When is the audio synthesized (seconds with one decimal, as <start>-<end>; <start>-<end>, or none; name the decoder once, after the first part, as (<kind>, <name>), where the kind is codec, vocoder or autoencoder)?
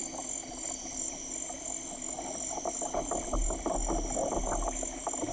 none